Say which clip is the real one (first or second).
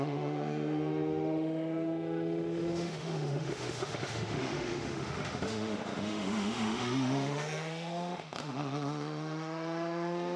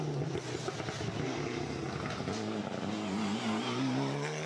second